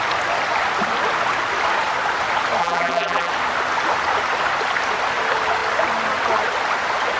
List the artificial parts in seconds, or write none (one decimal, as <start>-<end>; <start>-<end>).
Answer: 2.6-3.3